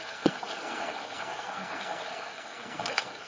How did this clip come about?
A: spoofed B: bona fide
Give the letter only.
A